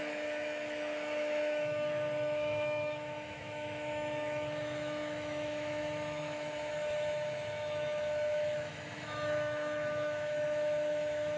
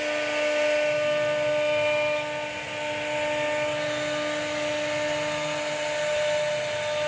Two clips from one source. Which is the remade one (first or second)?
first